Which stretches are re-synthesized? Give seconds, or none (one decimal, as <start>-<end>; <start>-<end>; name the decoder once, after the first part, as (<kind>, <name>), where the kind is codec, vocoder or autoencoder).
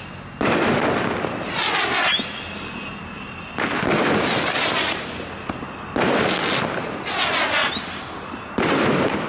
none